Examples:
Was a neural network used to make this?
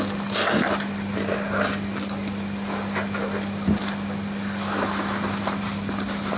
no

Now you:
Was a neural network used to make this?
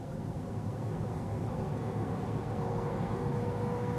yes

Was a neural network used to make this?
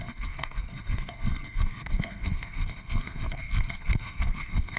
yes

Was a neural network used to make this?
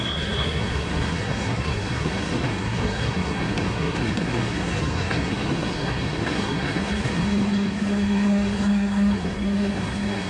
yes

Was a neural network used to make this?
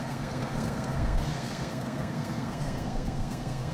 yes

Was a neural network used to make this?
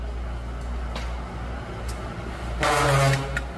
no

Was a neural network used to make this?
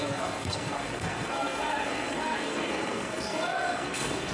yes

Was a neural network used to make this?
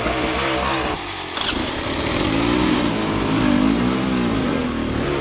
no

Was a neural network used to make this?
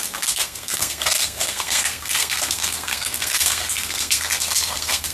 yes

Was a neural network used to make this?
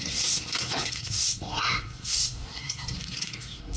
yes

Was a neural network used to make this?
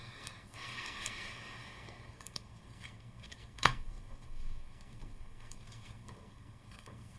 yes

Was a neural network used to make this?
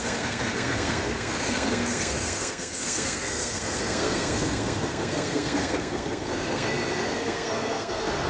yes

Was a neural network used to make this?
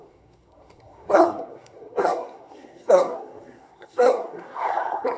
yes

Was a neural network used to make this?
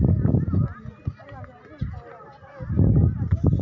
no